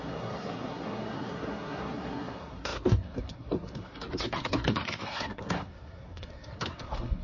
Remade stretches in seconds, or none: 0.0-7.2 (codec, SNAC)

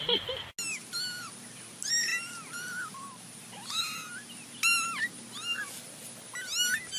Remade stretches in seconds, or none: none

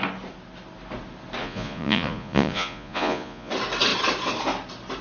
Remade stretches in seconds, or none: 1.4-3.5 (vocoder, Vocos)

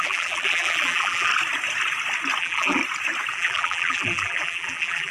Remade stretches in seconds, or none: 0.0-1.3 (vocoder, BigVGAN v2); 2.4-2.8; 3.3-5.1

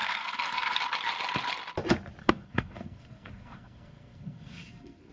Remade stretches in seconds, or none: 0.0-0.8 (codec, SNAC); 2.2-5.1